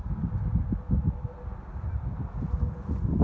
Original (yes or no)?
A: yes